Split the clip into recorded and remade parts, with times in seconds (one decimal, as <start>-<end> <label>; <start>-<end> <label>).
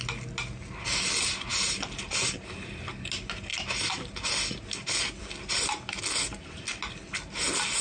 0.0-7.8 recorded